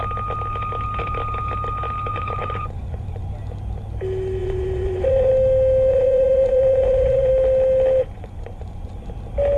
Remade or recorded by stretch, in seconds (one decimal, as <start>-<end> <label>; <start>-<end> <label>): 0.0-2.1 recorded; 2.1-3.3 remade; 3.3-4.4 recorded; 4.4-5.3 remade; 5.3-5.9 recorded; 5.9-7.3 remade; 7.3-8.0 recorded; 8.0-8.9 remade; 8.9-9.6 recorded